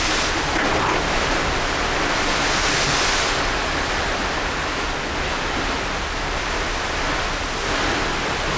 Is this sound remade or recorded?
recorded